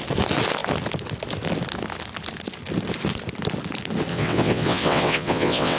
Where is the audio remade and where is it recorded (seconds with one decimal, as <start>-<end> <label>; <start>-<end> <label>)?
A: 0.0-4.1 recorded; 4.1-5.8 remade